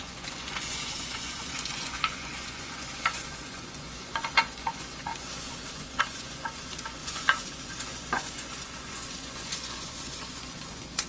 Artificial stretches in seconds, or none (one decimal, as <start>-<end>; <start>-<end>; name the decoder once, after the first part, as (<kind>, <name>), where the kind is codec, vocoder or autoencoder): 0.0-11.1 (vocoder, Vocos)